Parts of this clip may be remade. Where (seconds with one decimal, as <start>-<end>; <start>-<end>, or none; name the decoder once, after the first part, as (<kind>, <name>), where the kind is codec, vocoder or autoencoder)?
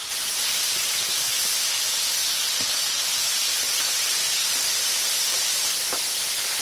0.0-2.2 (vocoder, BigVGAN v2); 3.8-6.6